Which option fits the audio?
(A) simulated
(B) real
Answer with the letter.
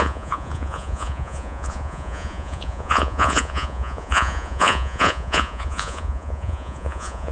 A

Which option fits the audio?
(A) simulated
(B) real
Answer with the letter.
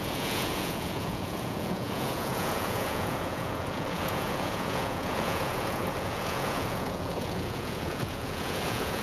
A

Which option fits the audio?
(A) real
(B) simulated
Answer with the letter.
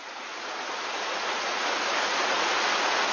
B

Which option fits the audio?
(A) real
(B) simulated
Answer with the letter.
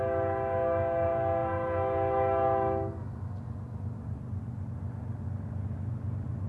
A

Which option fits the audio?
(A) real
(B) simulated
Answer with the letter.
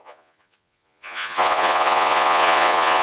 B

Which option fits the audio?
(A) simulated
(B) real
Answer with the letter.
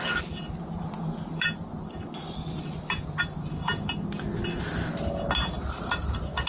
B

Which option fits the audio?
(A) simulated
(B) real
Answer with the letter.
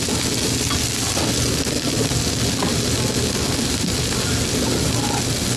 B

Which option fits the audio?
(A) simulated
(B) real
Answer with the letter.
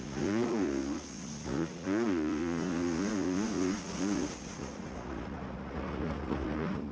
A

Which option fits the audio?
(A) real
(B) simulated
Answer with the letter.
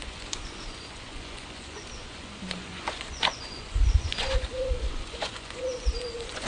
B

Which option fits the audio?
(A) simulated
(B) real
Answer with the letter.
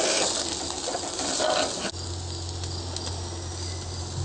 B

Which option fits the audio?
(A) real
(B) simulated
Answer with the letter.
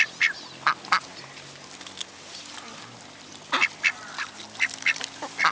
A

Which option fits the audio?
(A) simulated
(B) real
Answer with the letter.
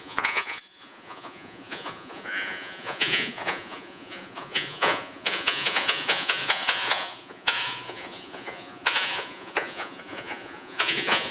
A